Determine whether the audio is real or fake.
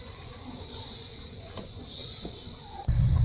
fake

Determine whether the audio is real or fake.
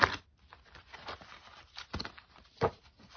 real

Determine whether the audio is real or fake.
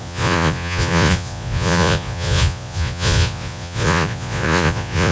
fake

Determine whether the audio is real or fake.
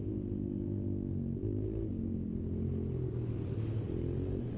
real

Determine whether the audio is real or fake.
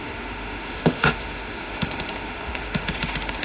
fake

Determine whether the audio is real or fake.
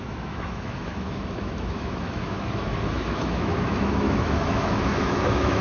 fake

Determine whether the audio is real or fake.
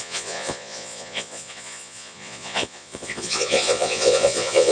fake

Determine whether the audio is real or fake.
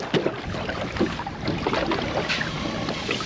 real